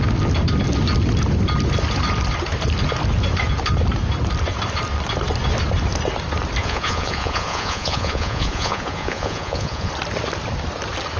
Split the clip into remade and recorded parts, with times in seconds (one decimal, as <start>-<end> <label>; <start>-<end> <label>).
0.0-6.6 recorded; 6.6-9.9 remade; 9.9-11.2 recorded